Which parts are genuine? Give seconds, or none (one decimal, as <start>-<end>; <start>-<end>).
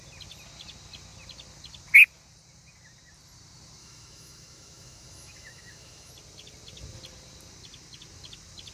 0.0-3.8; 6.1-8.7